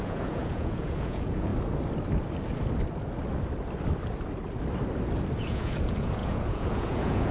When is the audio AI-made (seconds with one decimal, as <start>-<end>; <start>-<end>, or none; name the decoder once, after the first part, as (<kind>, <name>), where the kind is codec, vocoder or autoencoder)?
0.0-1.5 (vocoder, Vocos); 5.4-7.3